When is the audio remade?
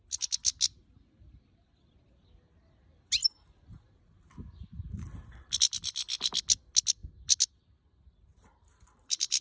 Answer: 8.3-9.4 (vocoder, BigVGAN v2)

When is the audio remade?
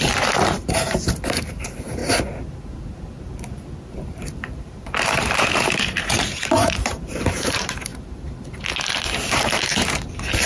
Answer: 0.0-2.0 (vocoder, BigVGAN v2); 3.9-7.9; 9.3-10.5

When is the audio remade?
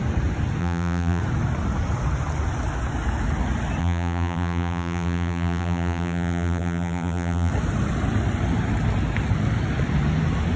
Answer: 0.6-1.2 (vocoder, BigVGAN v2); 3.8-7.5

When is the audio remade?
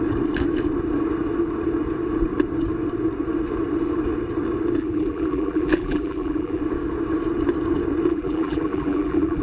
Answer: 4.8-6.6 (vocoder, BigVGAN v2); 8.1-9.4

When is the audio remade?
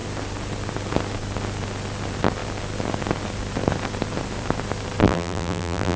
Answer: 5.0-6.0 (vocoder, BigVGAN v2)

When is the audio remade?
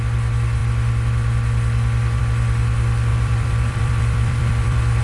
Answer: 3.1-5.0 (vocoder, BigVGAN v2)